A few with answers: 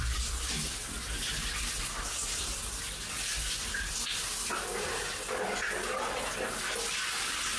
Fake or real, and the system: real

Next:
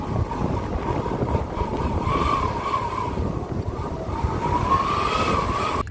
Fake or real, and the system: real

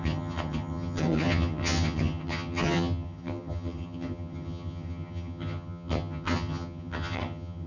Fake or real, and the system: fake, vocoder, HiFi-GAN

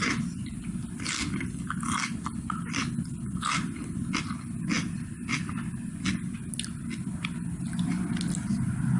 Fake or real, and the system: real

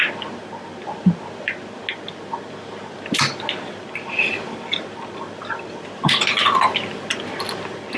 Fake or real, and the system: real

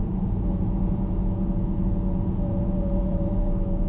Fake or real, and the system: fake, vocoder, Vocos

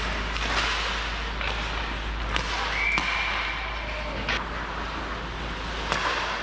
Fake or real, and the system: real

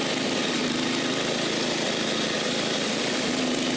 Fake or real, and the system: real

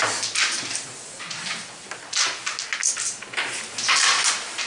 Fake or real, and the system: real